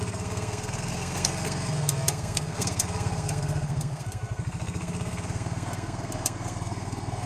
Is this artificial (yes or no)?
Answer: yes